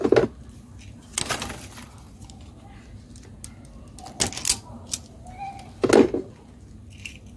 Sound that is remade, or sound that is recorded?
recorded